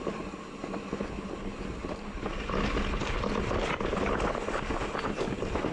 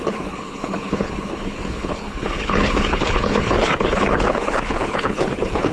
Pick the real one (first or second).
first